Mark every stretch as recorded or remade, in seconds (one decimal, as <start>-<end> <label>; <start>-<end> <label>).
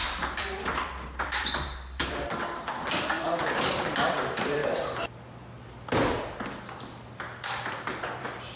0.0-4.6 remade; 4.6-7.8 recorded; 7.8-8.6 remade